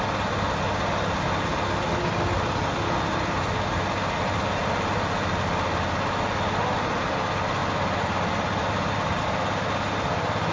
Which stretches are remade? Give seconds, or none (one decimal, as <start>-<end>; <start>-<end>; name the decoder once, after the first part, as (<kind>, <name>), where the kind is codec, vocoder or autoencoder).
none